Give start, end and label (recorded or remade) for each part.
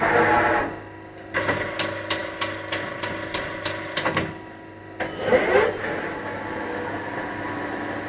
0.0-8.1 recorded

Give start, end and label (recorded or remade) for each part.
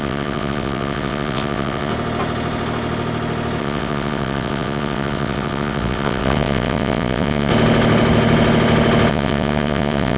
0.0-1.9 remade; 1.9-3.6 recorded; 3.6-7.5 remade; 7.5-9.1 recorded; 9.1-10.2 remade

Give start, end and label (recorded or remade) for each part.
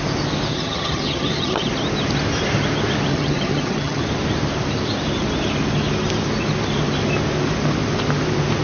0.0-0.5 recorded; 0.5-1.7 remade; 1.7-3.1 recorded; 3.1-4.0 remade; 4.0-8.6 recorded